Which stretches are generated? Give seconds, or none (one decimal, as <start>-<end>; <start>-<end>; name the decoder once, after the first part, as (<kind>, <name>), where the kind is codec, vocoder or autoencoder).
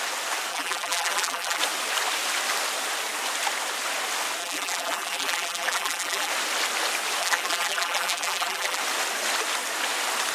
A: 0.5-1.6 (vocoder, BigVGAN v2); 4.4-6.3; 7.2-8.8